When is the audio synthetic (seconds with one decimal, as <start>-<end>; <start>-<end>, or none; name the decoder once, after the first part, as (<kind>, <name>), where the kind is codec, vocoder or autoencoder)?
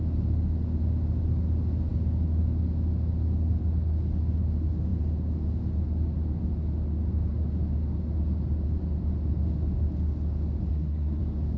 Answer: 10.7-11.2 (codec, SNAC)